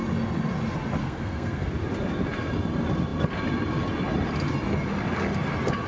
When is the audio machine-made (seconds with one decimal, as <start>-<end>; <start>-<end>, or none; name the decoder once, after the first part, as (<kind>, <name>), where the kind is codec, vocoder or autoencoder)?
1.0-1.7 (codec, SNAC)